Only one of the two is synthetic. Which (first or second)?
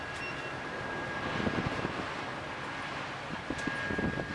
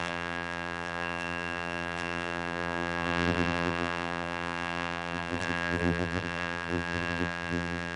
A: second